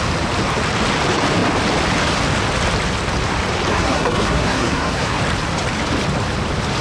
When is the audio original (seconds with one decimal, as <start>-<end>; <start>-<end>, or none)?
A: 0.0-3.7; 5.2-6.8